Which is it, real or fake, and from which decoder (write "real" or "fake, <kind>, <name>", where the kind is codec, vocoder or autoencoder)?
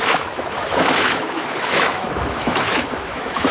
fake, autoencoder, DAC-VAE